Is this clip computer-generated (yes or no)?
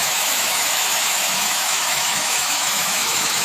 yes